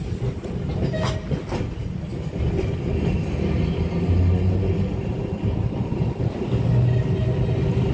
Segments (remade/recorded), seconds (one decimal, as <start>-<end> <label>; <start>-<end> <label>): 0.0-7.9 recorded